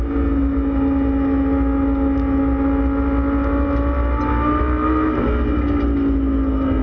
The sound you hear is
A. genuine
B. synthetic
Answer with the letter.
A